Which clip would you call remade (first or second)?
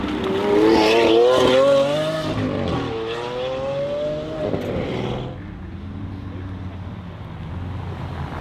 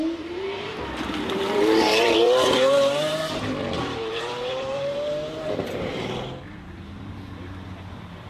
second